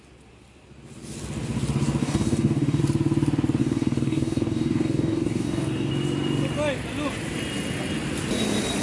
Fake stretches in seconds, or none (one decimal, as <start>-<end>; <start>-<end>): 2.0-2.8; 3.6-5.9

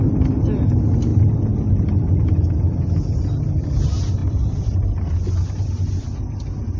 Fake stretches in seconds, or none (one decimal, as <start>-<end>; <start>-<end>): none

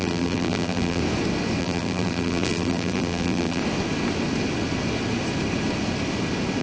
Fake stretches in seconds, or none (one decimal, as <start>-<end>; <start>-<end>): 0.0-1.0; 1.6-3.6

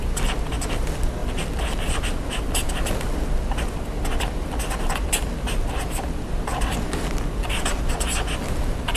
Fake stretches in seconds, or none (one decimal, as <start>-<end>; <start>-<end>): none

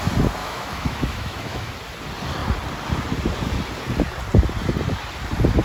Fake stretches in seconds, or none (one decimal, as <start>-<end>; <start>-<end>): 0.4-1.7